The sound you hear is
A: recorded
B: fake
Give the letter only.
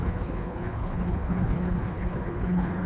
B